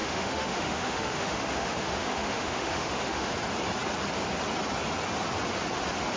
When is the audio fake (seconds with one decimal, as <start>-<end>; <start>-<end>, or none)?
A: 0.0-3.3